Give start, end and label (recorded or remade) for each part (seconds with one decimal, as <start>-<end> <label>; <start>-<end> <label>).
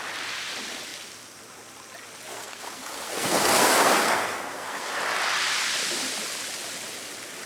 0.0-2.3 recorded; 2.3-5.0 remade; 5.0-7.5 recorded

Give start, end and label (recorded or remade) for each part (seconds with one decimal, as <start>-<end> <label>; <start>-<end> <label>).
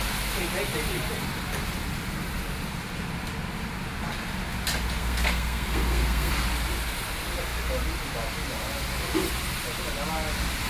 0.0-5.0 recorded; 5.0-6.3 remade; 6.3-10.7 recorded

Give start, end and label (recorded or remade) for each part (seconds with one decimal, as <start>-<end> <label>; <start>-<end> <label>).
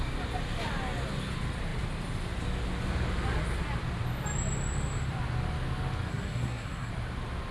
0.0-6.1 recorded; 6.1-6.9 remade; 6.9-7.5 recorded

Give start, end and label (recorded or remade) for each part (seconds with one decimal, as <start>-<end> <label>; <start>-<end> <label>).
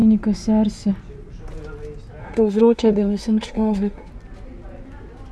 0.0-2.2 recorded; 2.2-4.1 remade; 4.1-5.3 recorded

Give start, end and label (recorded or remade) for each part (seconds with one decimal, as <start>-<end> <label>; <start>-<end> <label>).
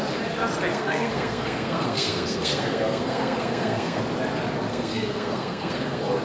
0.0-0.7 recorded; 0.7-4.0 remade; 4.0-4.7 recorded; 4.7-6.2 remade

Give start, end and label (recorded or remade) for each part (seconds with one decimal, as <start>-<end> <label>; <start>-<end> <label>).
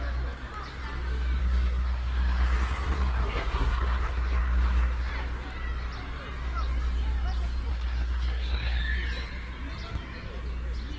0.0-1.4 recorded; 1.4-5.1 remade; 5.1-7.7 recorded; 7.7-8.8 remade; 8.8-11.0 recorded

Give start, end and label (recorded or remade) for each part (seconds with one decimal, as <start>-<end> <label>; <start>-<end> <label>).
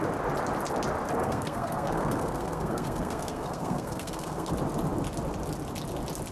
0.0-1.2 recorded; 1.2-4.5 remade; 4.5-6.3 recorded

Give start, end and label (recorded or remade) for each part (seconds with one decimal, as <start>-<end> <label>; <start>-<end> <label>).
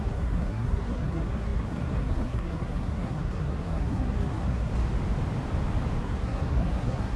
0.0-4.7 remade; 4.7-6.0 recorded; 6.0-7.2 remade